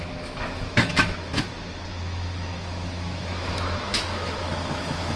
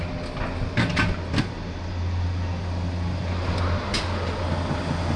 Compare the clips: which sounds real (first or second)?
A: second